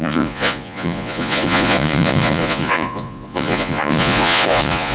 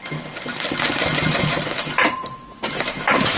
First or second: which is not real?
first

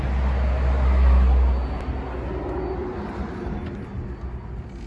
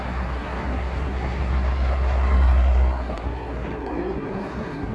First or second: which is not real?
second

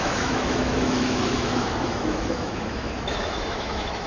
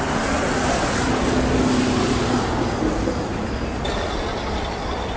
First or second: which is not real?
first